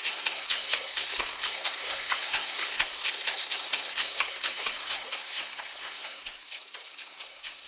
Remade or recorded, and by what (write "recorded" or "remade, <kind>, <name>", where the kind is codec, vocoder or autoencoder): remade, codec, SNAC